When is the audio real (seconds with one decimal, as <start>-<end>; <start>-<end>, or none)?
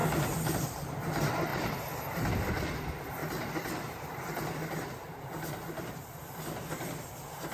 0.0-1.5; 2.3-3.2; 6.4-7.5